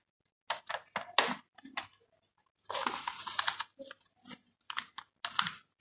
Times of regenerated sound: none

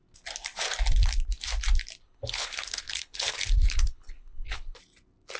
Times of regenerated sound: 2.0-4.8 (codec, HILCodec)

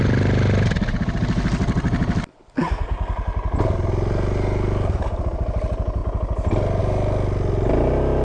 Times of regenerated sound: none

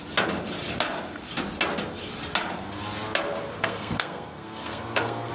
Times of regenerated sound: 3.6-5.3 (codec, SNAC)

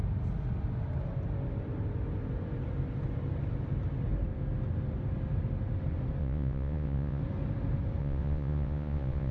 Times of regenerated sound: 6.2-7.2 (vocoder, Vocos); 8.0-9.3